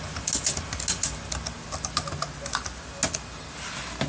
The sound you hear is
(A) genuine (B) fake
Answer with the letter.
A